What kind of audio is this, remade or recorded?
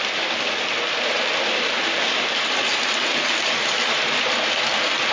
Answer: recorded